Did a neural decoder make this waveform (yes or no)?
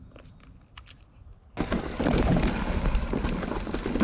no